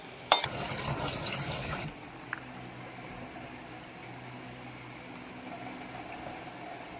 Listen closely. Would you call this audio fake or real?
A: fake